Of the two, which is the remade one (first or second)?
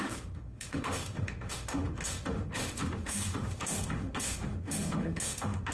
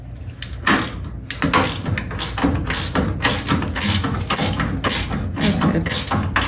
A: first